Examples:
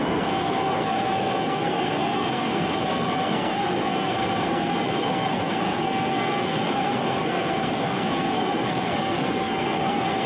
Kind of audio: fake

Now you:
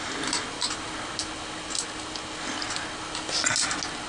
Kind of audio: real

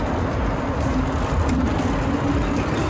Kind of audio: real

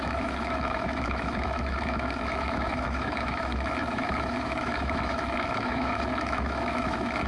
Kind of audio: fake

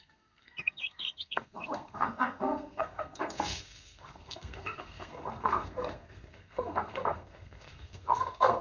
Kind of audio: fake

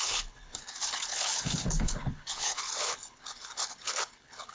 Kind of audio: fake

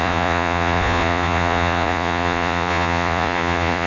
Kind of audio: fake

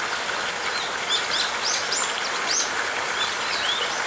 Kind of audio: real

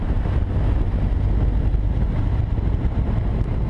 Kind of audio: real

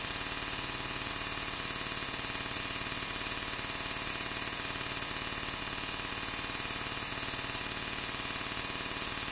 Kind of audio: fake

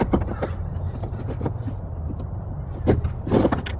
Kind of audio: real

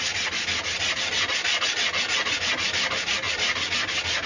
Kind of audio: real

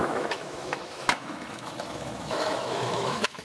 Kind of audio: fake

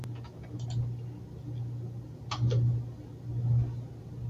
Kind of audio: real